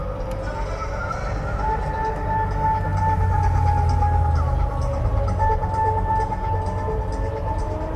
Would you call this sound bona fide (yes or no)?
yes